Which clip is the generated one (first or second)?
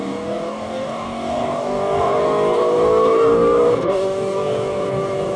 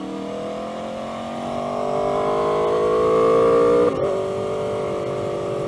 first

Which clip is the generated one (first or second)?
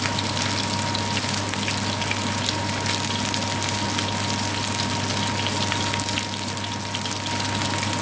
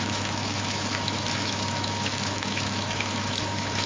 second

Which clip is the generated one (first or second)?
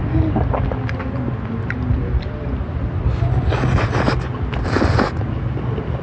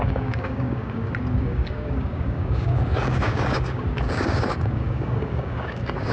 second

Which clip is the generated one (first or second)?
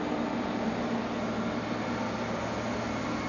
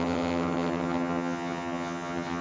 second